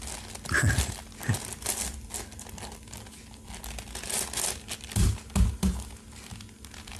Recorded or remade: recorded